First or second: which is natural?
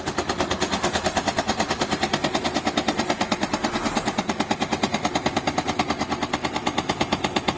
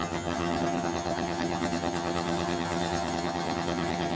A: first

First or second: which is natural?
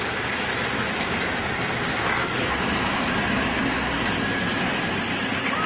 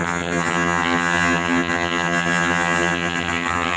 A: first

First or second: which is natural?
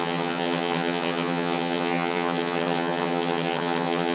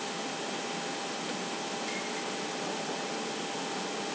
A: second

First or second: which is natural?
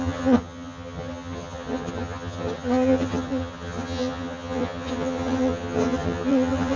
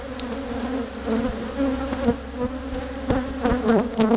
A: second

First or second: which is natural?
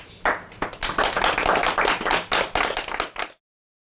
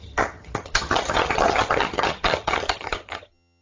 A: first